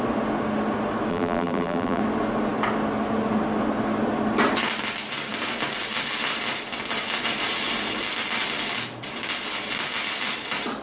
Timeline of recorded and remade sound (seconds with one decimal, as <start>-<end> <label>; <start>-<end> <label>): 0.0-1.1 recorded; 1.1-2.0 remade; 2.0-10.8 recorded